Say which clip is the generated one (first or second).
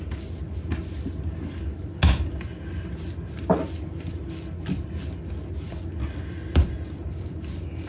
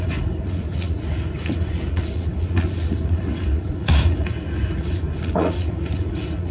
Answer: second